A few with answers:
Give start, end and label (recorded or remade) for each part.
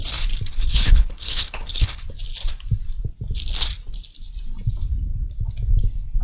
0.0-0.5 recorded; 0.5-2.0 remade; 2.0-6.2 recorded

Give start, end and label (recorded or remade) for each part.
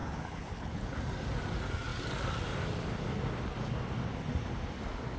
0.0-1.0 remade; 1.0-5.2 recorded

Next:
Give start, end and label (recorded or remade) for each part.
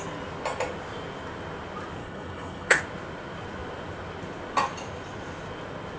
0.0-2.0 recorded; 2.0-2.8 remade; 2.8-6.0 recorded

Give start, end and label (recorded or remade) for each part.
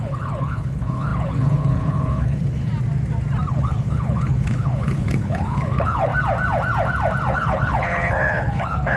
0.0-2.7 remade; 2.7-3.5 recorded; 3.5-6.1 remade; 6.1-7.3 recorded; 7.3-9.0 remade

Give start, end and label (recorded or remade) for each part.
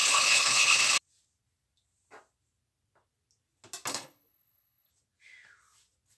0.0-0.8 remade; 0.8-3.9 recorded; 3.9-4.9 remade; 4.9-6.2 recorded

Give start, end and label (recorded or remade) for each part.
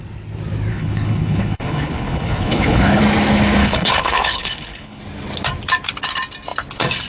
0.0-0.7 recorded; 0.7-3.0 remade; 3.0-3.6 recorded; 3.6-5.0 remade; 5.0-7.1 recorded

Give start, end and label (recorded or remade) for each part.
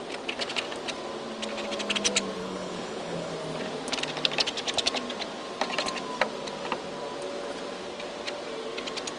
0.0-2.4 recorded; 2.4-3.3 remade; 3.3-9.2 recorded